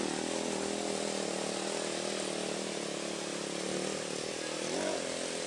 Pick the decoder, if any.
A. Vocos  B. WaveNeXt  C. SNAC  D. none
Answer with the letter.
D